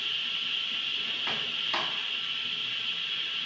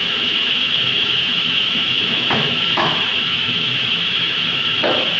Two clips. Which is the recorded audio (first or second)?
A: first